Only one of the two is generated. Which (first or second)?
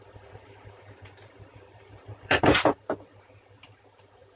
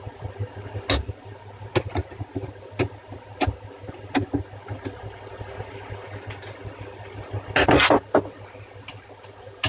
first